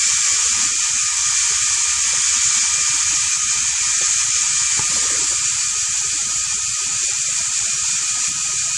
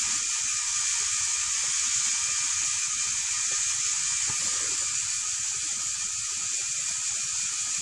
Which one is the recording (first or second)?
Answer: first